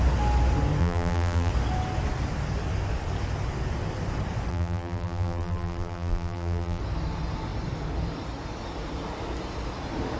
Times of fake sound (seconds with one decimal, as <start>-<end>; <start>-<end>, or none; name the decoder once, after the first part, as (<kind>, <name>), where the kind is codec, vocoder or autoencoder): 0.8-1.5 (vocoder, BigVGAN v2); 4.5-6.8